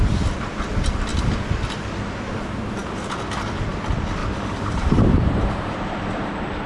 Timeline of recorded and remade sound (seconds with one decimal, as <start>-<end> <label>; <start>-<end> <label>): 0.0-4.2 recorded; 4.2-6.3 remade; 6.3-6.7 recorded